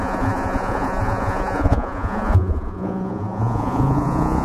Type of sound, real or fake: fake